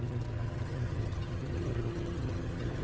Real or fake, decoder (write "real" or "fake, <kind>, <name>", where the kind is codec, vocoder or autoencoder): fake, vocoder, HiFi-GAN